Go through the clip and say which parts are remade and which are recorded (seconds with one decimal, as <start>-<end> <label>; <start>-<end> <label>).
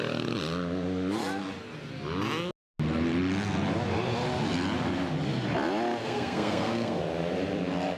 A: 0.0-6.0 recorded; 6.0-7.0 remade; 7.0-8.0 recorded